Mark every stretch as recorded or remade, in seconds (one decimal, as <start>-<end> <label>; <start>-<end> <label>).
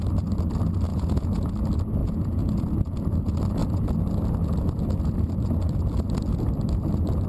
0.0-0.9 recorded; 0.9-1.5 remade; 1.5-2.0 recorded; 2.0-2.5 remade; 2.5-7.3 recorded